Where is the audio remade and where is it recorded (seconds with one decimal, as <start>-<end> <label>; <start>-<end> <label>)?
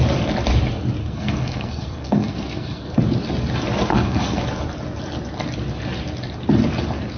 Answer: 0.0-1.0 recorded; 1.0-3.0 remade; 3.0-3.9 recorded; 3.9-4.4 remade; 4.4-7.2 recorded